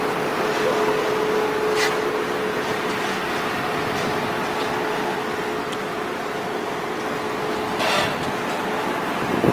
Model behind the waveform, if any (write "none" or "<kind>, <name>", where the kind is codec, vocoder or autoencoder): none